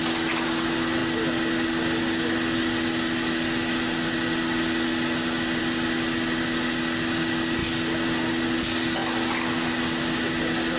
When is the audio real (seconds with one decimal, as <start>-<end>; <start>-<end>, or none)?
0.0-10.8